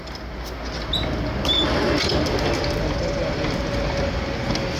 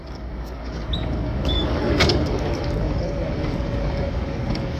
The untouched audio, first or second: first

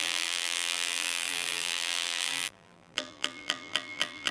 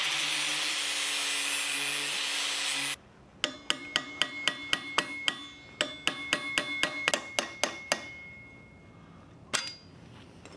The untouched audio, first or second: second